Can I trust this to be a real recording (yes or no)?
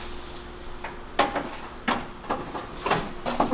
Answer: yes